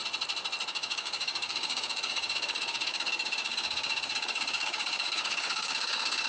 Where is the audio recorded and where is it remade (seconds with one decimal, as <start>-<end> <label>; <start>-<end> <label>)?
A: 0.0-0.7 recorded; 0.7-6.3 remade